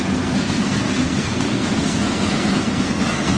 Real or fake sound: fake